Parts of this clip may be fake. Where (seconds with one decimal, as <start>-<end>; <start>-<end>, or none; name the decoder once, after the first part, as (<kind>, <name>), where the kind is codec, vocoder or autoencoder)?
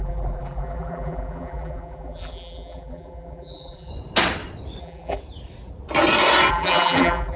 0.0-3.9 (vocoder, BigVGAN v2); 4.8-5.2; 6.5-7.4